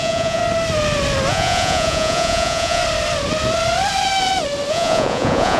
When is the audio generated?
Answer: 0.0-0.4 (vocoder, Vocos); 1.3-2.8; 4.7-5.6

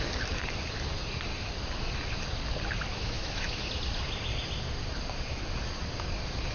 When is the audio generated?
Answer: 2.9-3.7 (autoencoder, DAC-VAE)

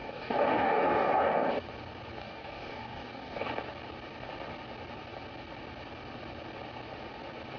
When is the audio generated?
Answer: 0.0-1.5 (codec, DAC); 2.2-3.5

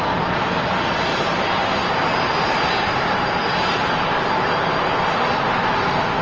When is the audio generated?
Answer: none